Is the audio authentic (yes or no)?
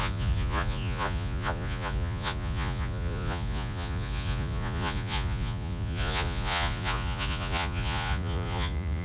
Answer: no